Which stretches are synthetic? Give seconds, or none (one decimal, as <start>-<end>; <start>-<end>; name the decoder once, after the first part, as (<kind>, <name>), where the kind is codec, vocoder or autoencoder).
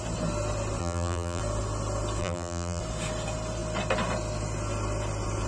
0.8-1.4 (vocoder, BigVGAN v2); 2.2-2.8